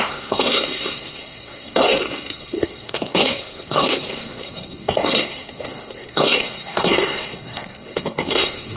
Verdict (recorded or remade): remade